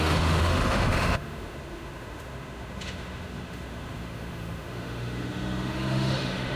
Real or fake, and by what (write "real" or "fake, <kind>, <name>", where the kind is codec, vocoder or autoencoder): fake, autoencoder, DAC-VAE